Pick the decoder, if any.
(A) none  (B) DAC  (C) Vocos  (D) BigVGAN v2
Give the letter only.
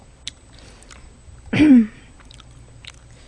D